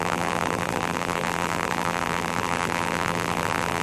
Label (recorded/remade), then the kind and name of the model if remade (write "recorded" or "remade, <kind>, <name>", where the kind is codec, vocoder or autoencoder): remade, vocoder, BigVGAN v2